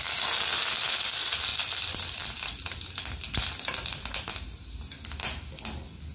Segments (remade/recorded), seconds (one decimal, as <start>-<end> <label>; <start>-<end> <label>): 0.0-1.5 recorded; 1.5-4.0 remade; 4.0-6.1 recorded